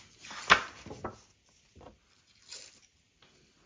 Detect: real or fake real